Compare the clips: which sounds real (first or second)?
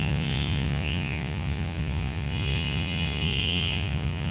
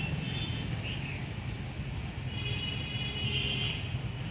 second